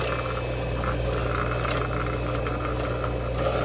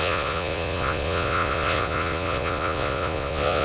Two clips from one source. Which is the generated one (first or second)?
second